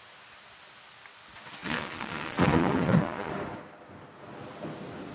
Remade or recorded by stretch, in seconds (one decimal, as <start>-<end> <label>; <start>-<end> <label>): 0.0-1.6 recorded; 1.6-3.3 remade; 3.3-5.1 recorded